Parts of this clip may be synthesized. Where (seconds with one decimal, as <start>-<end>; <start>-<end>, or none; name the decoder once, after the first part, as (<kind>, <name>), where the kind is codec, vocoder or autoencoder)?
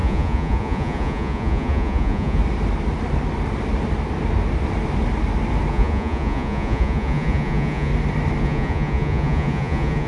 0.0-2.4 (vocoder, Vocos); 5.7-7.9; 8.4-10.1